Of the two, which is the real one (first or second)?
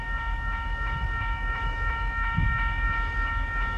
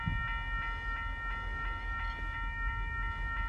second